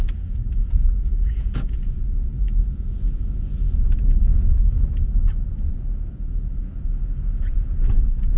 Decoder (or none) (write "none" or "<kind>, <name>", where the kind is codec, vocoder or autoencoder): vocoder, Vocos